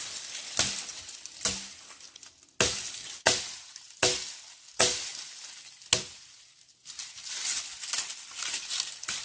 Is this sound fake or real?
real